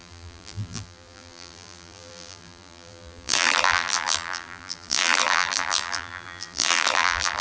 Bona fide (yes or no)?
no